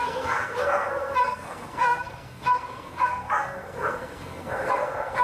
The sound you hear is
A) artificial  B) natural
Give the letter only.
A